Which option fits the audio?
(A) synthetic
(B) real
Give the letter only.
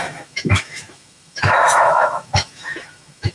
A